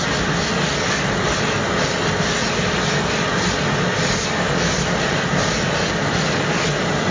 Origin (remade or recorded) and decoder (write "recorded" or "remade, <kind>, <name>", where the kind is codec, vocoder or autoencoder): recorded